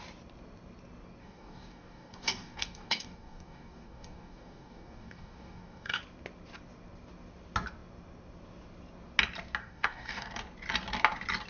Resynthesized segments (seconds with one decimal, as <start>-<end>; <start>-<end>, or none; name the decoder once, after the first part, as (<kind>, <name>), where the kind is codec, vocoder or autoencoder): 1.2-6.0 (codec, DAC); 9.6-10.4